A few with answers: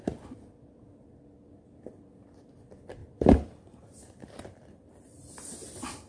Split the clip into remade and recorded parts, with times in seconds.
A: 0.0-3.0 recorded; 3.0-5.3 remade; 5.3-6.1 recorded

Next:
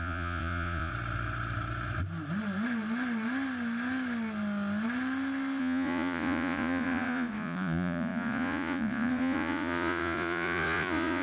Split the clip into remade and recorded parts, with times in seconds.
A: 0.0-0.9 remade; 0.9-5.6 recorded; 5.6-11.2 remade

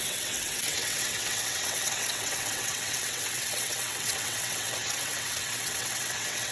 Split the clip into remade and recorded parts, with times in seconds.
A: 0.0-6.5 remade

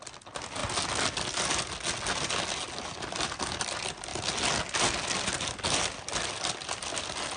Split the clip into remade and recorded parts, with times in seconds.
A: 0.0-7.4 recorded

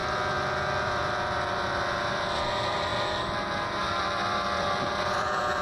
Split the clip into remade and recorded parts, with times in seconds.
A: 0.0-0.8 recorded; 0.8-2.9 remade; 2.9-3.8 recorded; 3.8-5.6 remade